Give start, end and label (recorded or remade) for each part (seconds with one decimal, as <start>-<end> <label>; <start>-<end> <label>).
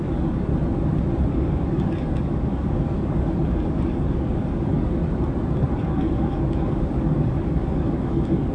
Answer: 0.0-0.5 remade; 0.5-1.3 recorded; 1.3-5.0 remade; 5.0-5.8 recorded; 5.8-8.5 remade